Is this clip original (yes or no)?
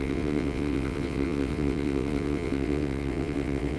no